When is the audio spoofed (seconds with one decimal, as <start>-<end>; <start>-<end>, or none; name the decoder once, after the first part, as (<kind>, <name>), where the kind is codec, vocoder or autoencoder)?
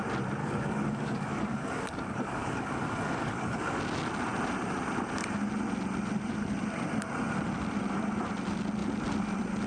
0.4-3.8 (codec, DAC)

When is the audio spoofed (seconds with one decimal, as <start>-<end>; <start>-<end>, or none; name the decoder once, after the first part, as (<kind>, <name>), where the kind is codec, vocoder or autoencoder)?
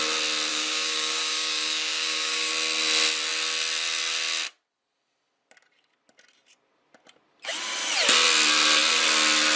0.5-2.5 (codec, DAC)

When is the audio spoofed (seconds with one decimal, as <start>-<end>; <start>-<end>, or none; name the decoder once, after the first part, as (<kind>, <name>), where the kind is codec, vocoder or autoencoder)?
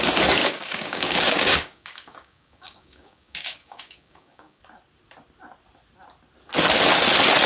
0.4-4.6 (codec, DAC)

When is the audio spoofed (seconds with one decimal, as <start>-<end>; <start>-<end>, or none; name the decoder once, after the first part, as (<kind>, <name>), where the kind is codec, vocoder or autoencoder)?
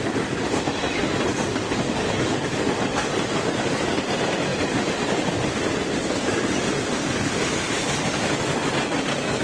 1.3-4.0 (codec, DAC)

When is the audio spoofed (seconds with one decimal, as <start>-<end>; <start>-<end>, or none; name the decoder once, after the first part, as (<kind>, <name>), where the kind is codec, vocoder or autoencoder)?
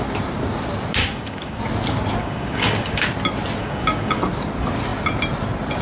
1.0-1.6 (codec, DAC); 2.2-3.0; 3.6-4.2